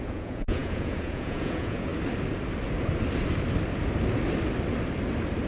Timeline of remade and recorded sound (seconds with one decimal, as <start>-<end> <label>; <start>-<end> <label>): 0.0-1.9 remade; 1.9-5.5 recorded